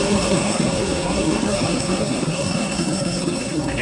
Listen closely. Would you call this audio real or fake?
fake